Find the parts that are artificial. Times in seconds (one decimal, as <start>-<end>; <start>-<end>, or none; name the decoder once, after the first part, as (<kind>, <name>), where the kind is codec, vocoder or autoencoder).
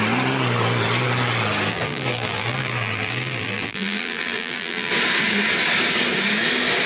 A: 1.7-4.9 (vocoder, BigVGAN v2)